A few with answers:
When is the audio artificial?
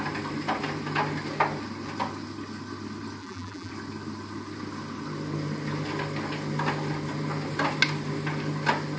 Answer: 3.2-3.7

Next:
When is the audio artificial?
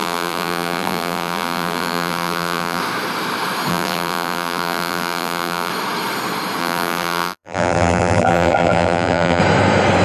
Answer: 0.0-2.8; 3.7-5.7; 6.6-9.4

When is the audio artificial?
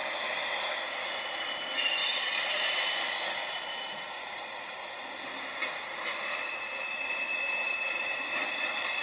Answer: none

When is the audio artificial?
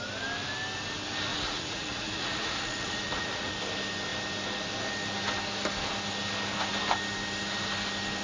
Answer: 1.3-3.5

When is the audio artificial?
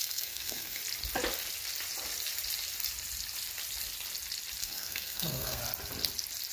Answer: 0.0-0.8; 4.6-5.6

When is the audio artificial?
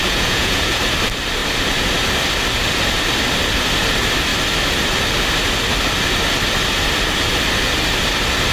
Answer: 0.0-0.8